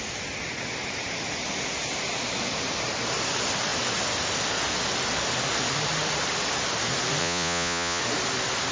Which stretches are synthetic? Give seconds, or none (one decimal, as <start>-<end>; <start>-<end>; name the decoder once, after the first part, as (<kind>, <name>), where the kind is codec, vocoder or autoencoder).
7.2-8.0 (vocoder, Vocos)